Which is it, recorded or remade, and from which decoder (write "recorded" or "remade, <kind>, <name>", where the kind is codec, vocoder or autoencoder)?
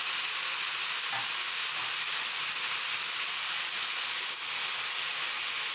recorded